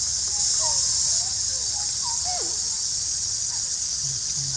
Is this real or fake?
real